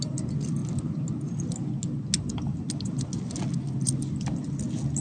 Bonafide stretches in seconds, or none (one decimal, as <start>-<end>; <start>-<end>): 0.0-5.0

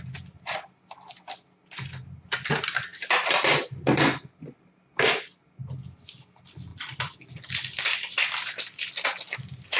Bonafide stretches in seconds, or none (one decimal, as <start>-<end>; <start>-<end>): 0.0-9.8

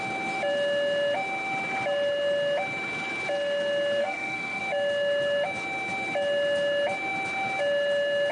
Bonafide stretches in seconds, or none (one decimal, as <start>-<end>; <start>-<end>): 0.0-4.0; 4.6-8.3